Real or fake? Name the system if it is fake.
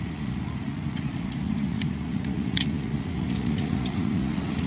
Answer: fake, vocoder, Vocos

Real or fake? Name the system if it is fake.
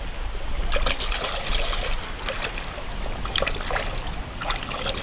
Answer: real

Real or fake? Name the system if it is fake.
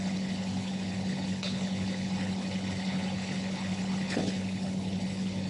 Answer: fake, codec, HILCodec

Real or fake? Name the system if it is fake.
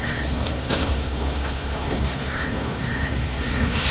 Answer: fake, codec, SNAC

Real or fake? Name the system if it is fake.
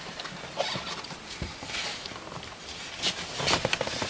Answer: real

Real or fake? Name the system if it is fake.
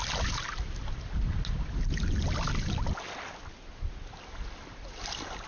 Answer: real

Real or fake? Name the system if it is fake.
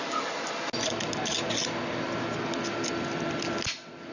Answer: real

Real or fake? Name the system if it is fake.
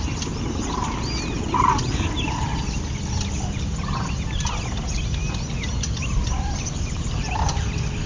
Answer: real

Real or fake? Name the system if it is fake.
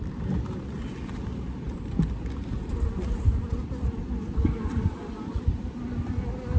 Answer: real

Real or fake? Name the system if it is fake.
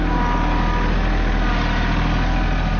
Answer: real